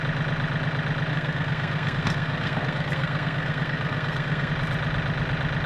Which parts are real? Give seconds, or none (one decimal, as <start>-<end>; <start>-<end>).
0.0-1.1; 4.5-5.7

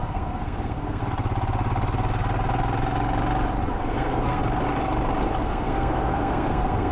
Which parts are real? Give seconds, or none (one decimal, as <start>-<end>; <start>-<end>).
1.0-3.7; 4.4-5.4

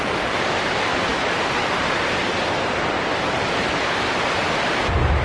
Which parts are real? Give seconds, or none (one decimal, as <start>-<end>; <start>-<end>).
0.0-5.2

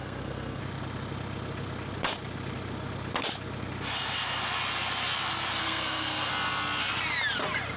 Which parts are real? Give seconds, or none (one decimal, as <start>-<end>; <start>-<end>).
0.6-5.6; 6.3-7.8

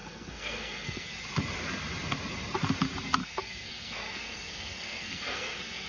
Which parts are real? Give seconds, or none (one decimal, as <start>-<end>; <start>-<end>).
1.1-3.2